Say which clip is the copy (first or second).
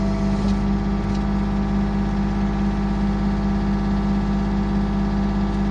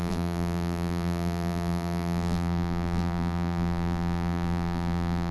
second